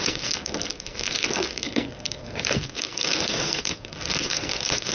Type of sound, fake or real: fake